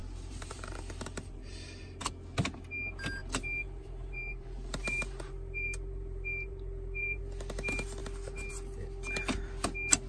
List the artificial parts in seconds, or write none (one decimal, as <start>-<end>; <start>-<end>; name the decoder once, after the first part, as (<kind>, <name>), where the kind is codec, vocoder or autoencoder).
0.0-2.0 (vocoder, BigVGAN v2); 3.2-7.2